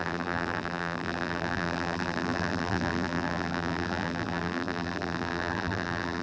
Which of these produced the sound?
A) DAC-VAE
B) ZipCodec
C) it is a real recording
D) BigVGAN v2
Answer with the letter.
D